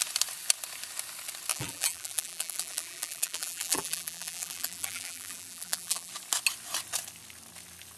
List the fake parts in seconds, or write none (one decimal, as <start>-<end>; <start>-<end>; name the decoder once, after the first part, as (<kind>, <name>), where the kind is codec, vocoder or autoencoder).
1.5-6.1 (vocoder, BigVGAN v2)

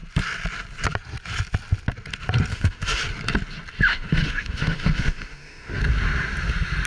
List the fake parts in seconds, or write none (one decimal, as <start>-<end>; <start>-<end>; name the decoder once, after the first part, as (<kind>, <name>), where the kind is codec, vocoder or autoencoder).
2.5-3.0 (autoencoder, DAC-VAE); 3.9-5.8

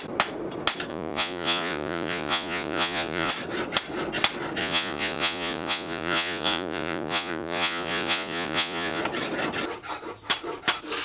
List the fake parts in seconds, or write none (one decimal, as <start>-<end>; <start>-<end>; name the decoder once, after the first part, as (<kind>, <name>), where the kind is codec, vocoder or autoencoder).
0.9-3.3 (vocoder, Vocos); 4.6-9.0

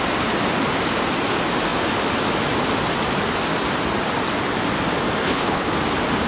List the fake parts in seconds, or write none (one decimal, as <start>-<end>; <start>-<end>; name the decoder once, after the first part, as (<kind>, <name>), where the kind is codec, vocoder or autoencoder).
5.2-5.7 (codec, HILCodec)

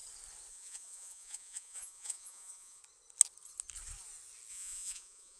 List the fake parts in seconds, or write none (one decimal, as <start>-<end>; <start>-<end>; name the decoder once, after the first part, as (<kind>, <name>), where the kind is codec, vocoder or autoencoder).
0.5-2.8 (vocoder, Vocos); 4.5-5.4

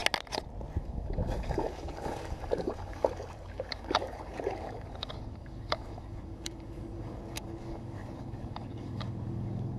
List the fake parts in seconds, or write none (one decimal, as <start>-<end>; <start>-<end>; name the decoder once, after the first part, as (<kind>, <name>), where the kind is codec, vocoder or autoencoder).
0.8-9.8 (codec, DAC)

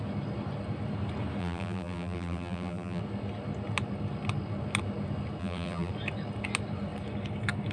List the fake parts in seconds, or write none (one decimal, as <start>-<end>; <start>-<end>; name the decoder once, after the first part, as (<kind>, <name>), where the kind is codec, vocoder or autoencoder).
1.4-3.0 (vocoder, BigVGAN v2); 5.4-5.9

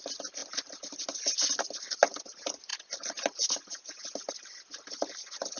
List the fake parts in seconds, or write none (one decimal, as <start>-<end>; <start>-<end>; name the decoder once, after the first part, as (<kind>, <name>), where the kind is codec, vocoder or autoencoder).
none